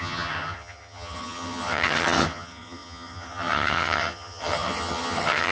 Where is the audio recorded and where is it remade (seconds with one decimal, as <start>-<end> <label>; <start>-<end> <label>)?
0.0-5.5 remade